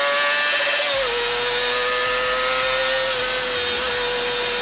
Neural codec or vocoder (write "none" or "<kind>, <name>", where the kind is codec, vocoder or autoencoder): none